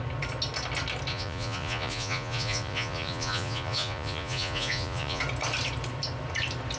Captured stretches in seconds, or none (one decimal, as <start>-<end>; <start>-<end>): 0.0-1.1; 5.2-6.8